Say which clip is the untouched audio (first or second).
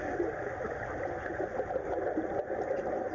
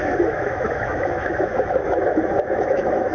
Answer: first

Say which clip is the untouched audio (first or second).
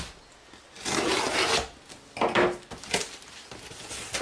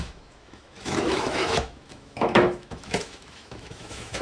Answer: first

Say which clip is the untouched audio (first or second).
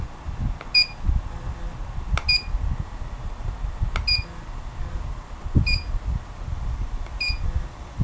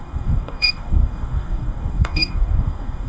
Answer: first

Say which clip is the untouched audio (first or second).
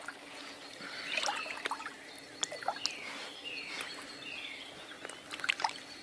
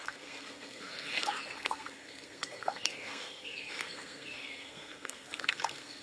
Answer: first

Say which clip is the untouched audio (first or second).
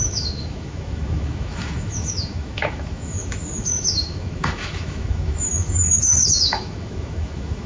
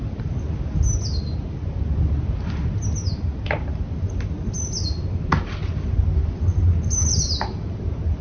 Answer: second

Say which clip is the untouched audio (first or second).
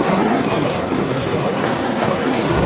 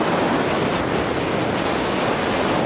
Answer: second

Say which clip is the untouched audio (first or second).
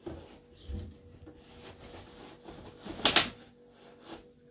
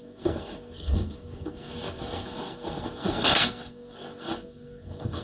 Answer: first